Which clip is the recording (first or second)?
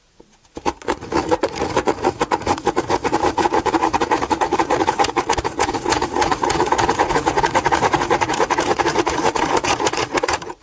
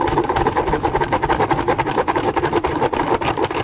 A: second